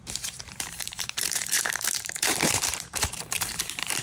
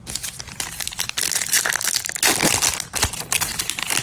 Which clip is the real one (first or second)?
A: second